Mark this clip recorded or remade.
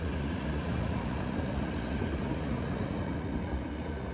remade